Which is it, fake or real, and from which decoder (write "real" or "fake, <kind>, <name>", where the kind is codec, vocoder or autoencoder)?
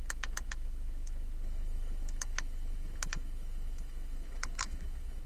fake, autoencoder, DAC-VAE